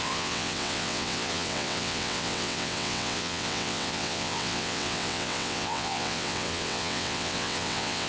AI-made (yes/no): yes